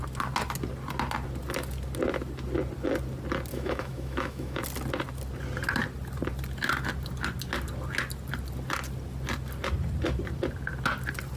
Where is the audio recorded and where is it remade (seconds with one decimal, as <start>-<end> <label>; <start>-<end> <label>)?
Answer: 0.0-3.5 recorded; 3.5-4.6 remade; 4.6-11.4 recorded